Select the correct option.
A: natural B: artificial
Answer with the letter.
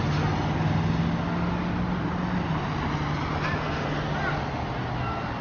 A